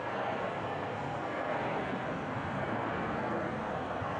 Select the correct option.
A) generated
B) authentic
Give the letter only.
A